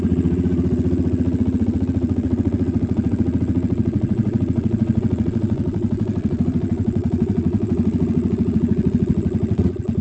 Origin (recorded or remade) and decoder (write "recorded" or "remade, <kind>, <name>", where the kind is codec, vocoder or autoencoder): remade, vocoder, Vocos